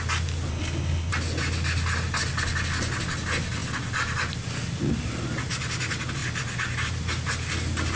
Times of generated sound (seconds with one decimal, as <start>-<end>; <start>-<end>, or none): 0.5-1.1

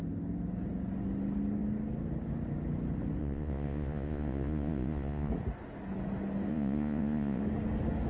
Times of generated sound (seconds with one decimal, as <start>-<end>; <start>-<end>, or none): 3.2-5.3; 6.5-7.4

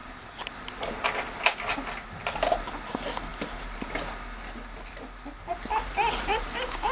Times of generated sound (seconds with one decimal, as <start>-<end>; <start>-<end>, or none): none

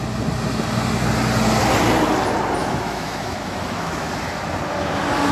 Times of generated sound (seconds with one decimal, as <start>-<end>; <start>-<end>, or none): 2.6-4.1

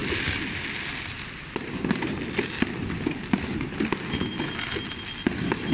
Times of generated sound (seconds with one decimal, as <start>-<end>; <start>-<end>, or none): none

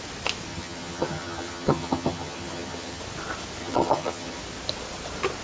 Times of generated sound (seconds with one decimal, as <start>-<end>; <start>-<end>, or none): 0.5-3.0; 3.6-4.4